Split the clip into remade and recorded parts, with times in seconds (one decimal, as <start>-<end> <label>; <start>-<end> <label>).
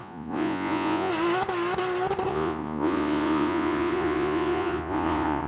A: 0.0-1.1 remade; 1.1-2.3 recorded; 2.3-5.5 remade